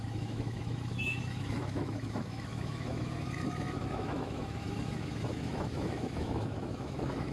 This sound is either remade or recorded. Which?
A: remade